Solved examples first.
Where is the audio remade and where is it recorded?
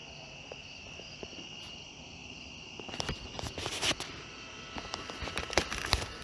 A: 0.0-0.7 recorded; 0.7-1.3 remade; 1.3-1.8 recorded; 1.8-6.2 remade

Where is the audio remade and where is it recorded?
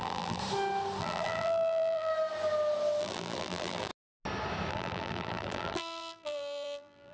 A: 0.0-0.4 remade; 0.4-1.0 recorded; 1.0-2.1 remade; 2.1-3.0 recorded; 3.0-3.9 remade; 3.9-4.7 recorded; 4.7-7.1 remade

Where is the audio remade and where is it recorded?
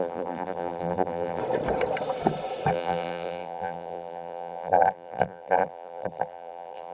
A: 0.0-1.4 remade; 1.4-2.7 recorded; 2.7-6.9 remade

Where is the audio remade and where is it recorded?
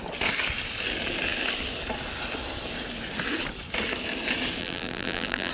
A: 0.0-4.6 recorded; 4.6-5.5 remade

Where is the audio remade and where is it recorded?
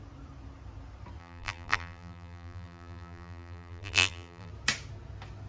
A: 0.0-1.2 recorded; 1.2-4.5 remade; 4.5-5.5 recorded